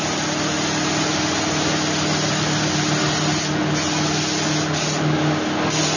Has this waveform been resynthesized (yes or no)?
no